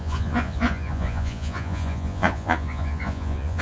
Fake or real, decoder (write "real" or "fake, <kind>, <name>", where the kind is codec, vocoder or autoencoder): fake, vocoder, Vocos